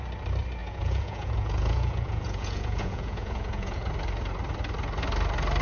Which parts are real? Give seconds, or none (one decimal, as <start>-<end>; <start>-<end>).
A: 0.0-0.6; 3.9-5.6

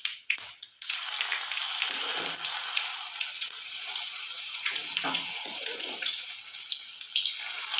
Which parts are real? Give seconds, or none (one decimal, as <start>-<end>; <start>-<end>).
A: 1.1-2.6; 6.4-7.8

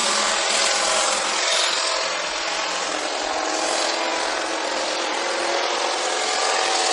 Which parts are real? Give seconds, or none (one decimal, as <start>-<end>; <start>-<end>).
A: 0.0-6.9

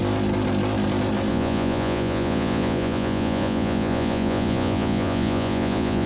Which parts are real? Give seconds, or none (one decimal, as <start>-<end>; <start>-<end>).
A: 0.0-1.3